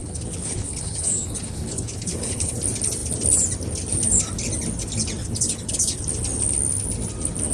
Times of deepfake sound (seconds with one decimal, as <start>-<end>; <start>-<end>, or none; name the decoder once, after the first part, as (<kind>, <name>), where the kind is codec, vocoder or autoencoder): 0.0-2.6 (codec, HILCodec); 5.2-6.0